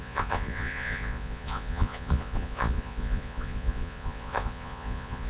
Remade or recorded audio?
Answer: remade